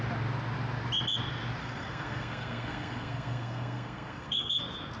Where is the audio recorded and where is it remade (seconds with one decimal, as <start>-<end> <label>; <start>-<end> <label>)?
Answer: 0.0-1.6 recorded; 1.6-4.6 remade; 4.6-5.0 recorded